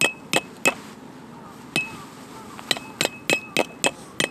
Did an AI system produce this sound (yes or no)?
no